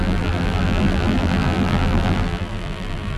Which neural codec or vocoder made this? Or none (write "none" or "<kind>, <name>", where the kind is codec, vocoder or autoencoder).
vocoder, BigVGAN v2